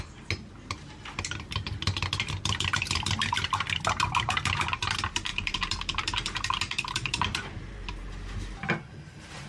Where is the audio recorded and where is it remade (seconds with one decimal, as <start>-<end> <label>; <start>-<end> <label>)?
0.0-5.3 recorded; 5.3-8.1 remade; 8.1-9.5 recorded